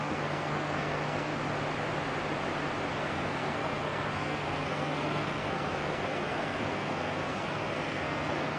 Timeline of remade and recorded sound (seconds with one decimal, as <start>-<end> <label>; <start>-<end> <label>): 0.0-1.3 remade; 1.3-2.9 recorded; 2.9-8.6 remade